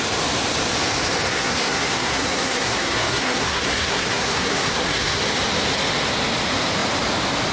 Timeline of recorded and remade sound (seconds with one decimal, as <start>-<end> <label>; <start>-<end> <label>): 0.0-1.3 recorded; 1.3-5.2 remade; 5.2-7.5 recorded